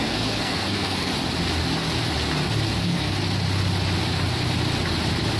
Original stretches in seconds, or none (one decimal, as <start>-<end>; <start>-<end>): 1.1-2.8; 3.2-5.4